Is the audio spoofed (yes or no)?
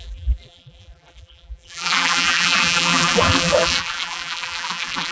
yes